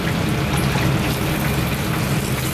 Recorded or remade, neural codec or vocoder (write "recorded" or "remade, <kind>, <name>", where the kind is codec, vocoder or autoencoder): recorded